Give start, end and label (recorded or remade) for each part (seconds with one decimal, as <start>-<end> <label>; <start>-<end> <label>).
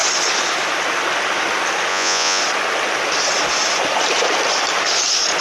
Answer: 0.0-1.9 recorded; 1.9-2.4 remade; 2.4-5.4 recorded